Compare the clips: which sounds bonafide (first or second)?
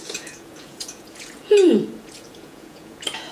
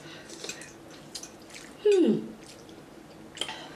second